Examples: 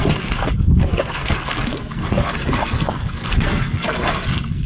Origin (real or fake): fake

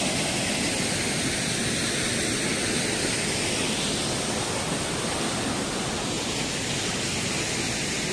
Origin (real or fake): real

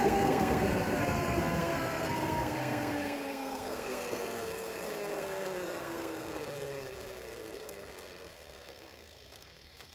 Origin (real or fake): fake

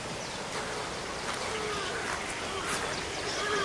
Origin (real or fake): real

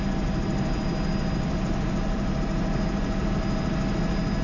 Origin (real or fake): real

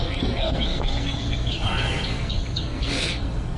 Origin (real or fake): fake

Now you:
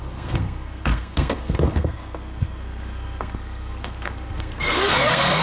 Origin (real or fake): fake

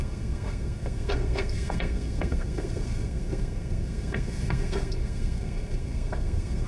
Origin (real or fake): fake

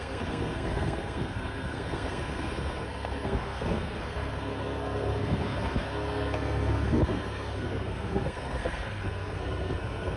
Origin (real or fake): fake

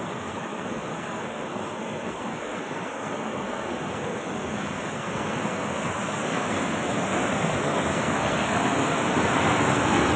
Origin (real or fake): fake